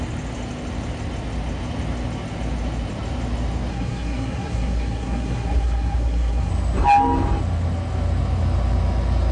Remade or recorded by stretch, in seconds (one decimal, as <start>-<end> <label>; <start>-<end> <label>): 0.0-3.7 recorded; 3.7-6.5 remade; 6.5-9.3 recorded